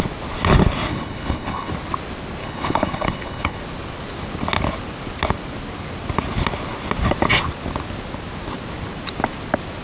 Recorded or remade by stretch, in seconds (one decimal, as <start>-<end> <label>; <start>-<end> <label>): 0.0-0.9 recorded; 0.9-1.7 remade; 1.7-2.4 recorded; 2.4-3.6 remade; 3.6-9.8 recorded